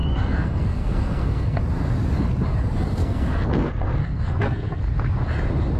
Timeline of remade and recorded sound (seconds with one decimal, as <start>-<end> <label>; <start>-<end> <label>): 0.0-1.6 remade; 1.6-3.0 recorded; 3.0-4.8 remade; 4.8-5.8 recorded